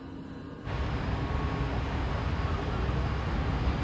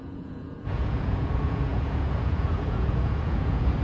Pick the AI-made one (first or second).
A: second